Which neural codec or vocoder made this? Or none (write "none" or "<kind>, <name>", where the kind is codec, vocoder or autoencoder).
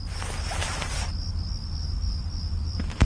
none